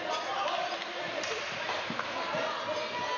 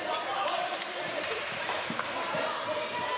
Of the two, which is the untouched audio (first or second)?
first